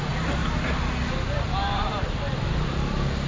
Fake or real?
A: real